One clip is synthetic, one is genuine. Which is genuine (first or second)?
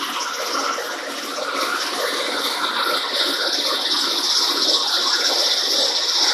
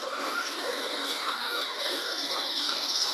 first